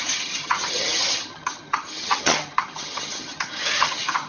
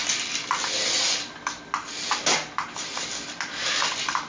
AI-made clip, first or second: first